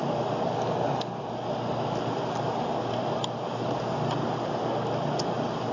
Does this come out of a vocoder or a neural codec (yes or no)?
no